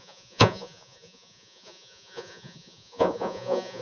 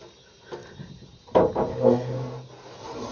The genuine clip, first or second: second